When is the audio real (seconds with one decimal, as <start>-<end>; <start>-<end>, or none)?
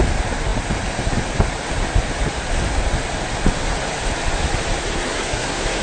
0.0-4.8